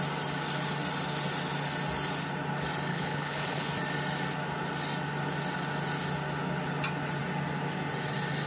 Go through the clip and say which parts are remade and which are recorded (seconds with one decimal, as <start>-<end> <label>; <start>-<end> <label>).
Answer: 0.0-2.9 recorded; 2.9-3.7 remade; 3.7-8.5 recorded

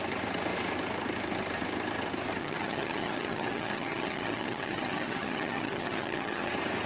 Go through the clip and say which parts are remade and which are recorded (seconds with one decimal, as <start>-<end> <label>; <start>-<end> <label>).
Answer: 0.0-2.4 recorded; 2.4-6.5 remade; 6.5-6.9 recorded

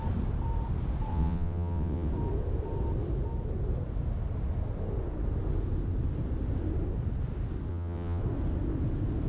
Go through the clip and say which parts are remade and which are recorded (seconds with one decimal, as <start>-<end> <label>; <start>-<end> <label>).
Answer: 0.0-1.1 recorded; 1.1-2.1 remade; 2.1-7.7 recorded; 7.7-8.2 remade; 8.2-9.3 recorded

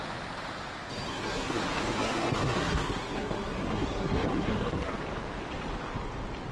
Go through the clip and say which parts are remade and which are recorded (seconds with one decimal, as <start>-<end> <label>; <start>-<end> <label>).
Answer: 0.0-1.1 recorded; 1.1-5.0 remade; 5.0-6.5 recorded